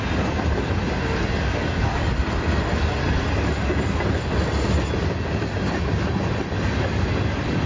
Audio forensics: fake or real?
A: real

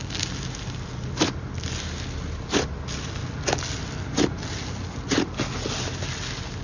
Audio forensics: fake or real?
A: real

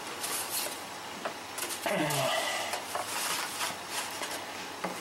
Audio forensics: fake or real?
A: real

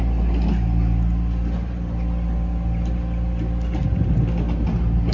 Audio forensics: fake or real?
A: real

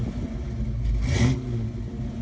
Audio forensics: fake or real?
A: real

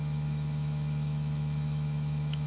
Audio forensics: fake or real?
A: fake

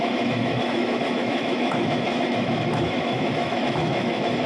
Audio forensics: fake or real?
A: fake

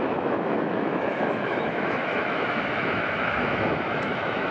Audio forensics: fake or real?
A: fake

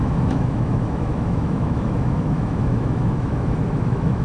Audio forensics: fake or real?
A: fake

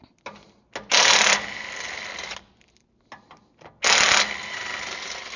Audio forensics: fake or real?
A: real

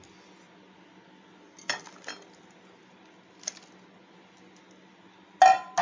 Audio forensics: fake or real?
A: real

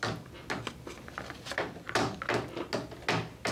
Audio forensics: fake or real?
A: real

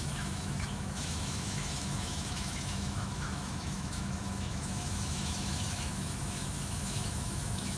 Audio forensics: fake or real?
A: fake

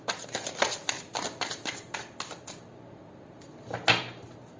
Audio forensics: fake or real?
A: real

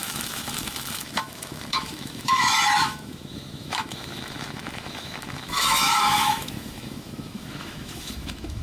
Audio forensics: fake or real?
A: fake